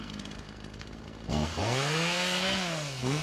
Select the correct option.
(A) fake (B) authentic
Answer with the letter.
A